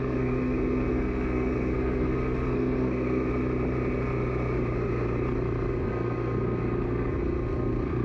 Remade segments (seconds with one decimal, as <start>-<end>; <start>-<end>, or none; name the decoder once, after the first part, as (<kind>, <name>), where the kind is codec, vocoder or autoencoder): 0.0-3.3 (codec, SNAC); 5.7-8.0